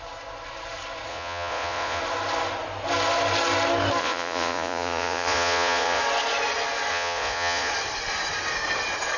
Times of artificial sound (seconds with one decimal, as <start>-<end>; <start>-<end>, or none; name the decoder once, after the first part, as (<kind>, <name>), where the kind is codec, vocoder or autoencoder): 1.1-2.0 (vocoder, Vocos); 4.0-6.0; 6.9-7.7